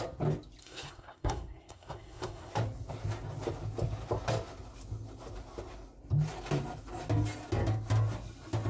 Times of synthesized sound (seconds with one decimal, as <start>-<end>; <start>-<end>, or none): 0.6-2.5

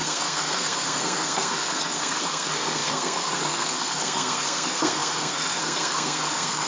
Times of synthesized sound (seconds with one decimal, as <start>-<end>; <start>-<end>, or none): 0.0-6.7

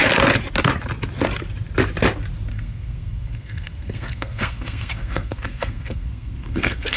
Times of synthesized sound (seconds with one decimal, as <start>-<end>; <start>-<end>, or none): 2.5-7.0

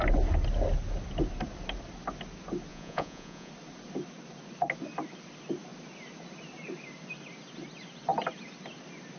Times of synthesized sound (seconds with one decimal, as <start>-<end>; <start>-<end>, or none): 2.7-3.5

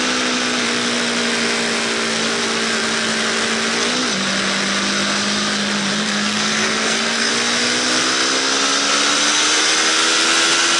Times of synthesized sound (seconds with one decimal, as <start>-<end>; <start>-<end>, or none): 6.0-7.3

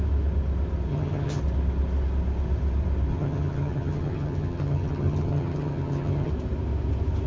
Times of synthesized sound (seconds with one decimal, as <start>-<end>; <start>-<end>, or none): 0.9-1.4; 3.1-6.3